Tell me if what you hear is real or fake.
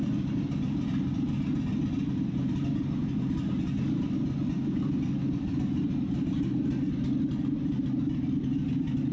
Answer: real